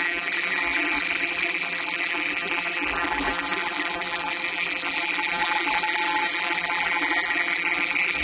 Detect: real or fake fake